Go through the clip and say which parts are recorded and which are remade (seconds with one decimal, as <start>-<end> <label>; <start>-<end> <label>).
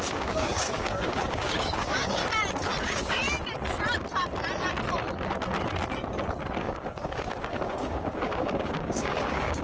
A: 0.0-2.2 remade; 2.2-2.8 recorded; 2.8-3.2 remade; 3.2-6.6 recorded; 6.6-9.6 remade